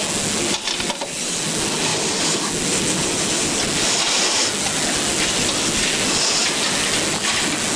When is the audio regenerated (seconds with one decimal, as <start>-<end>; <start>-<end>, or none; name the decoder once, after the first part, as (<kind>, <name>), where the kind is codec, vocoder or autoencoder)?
none